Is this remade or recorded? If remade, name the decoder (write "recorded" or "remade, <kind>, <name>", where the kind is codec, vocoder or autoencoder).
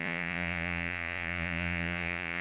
remade, vocoder, Vocos